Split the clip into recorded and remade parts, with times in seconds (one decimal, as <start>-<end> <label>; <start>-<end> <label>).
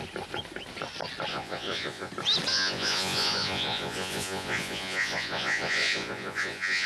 0.0-1.3 recorded; 1.3-2.1 remade; 2.1-2.5 recorded; 2.5-6.9 remade